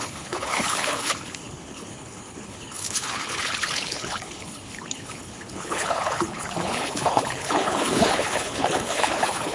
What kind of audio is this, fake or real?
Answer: fake